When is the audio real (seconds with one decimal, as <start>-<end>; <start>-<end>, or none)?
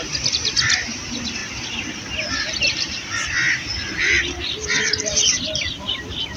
1.4-2.3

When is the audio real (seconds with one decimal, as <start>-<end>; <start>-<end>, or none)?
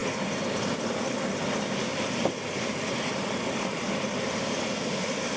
0.0-1.9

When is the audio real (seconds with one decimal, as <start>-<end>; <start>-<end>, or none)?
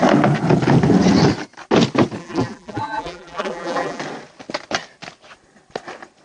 0.0-2.2; 4.0-6.2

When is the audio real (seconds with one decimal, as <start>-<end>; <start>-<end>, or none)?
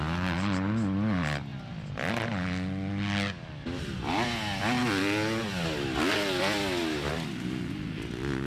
0.0-8.5